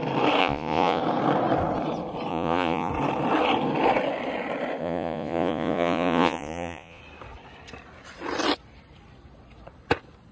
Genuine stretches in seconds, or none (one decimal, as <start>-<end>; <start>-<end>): 0.0-0.4; 1.0-2.3; 2.9-4.8; 7.0-10.3